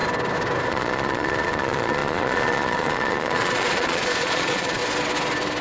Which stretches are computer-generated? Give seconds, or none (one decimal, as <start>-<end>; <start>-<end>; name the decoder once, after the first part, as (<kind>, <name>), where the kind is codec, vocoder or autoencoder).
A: 0.7-4.8 (vocoder, Vocos)